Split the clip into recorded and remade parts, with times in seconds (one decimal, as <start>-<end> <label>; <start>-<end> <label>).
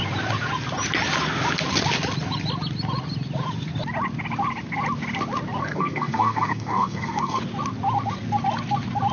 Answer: 0.0-5.6 recorded; 5.6-7.4 remade; 7.4-9.1 recorded